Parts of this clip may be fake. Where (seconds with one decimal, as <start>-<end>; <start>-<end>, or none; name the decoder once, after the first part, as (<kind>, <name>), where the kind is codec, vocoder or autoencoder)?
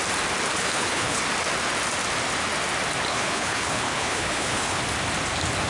0.6-1.2 (codec, HILCodec); 3.1-4.8